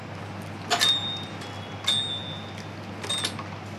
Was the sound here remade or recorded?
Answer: recorded